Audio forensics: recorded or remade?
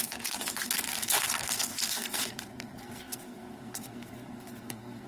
remade